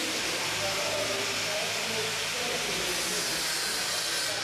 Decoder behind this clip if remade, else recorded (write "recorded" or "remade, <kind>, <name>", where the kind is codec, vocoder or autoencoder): recorded